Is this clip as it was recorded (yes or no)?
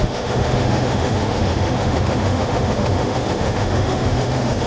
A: no